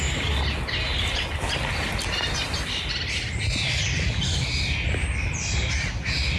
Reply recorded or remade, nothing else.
recorded